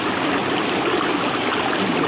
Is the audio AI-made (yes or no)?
no